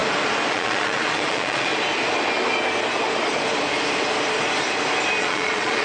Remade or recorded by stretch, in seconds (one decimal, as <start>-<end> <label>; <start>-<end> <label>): 0.0-0.5 recorded; 0.5-1.7 remade; 1.7-5.2 recorded; 5.2-5.8 remade